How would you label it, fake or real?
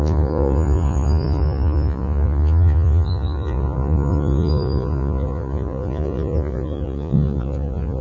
fake